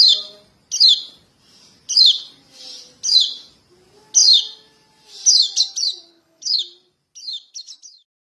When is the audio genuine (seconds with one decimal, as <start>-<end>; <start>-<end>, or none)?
0.0-6.1; 6.6-8.2